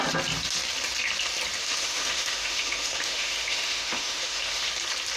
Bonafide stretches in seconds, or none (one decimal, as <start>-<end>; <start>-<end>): 0.0-1.6; 4.7-5.2